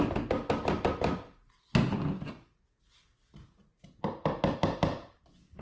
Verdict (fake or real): real